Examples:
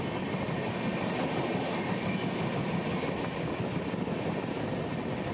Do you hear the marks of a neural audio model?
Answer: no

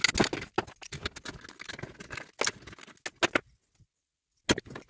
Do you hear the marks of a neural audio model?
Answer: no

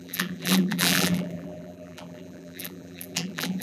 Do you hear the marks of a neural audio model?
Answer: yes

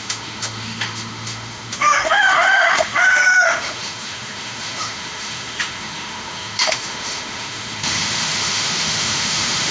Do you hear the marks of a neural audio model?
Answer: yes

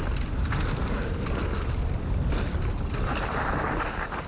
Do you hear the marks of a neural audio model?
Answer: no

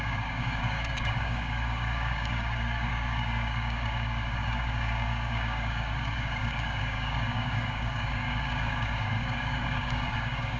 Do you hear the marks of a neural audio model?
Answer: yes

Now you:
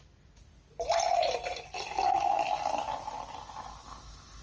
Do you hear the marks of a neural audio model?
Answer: no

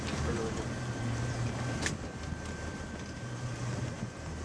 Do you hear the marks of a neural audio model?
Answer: no